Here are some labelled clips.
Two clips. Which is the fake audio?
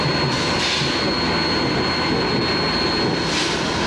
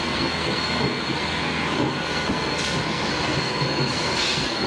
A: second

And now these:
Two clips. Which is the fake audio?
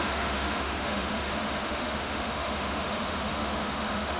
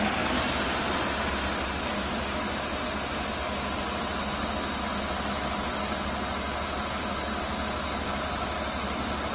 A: first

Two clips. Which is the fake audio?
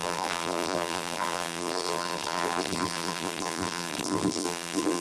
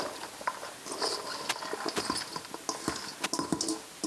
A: first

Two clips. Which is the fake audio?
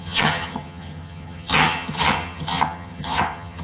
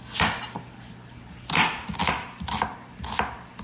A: first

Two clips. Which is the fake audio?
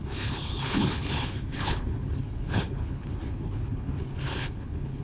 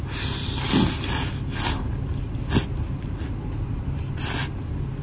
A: first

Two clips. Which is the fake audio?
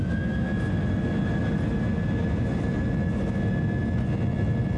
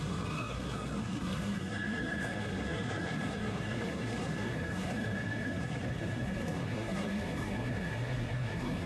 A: second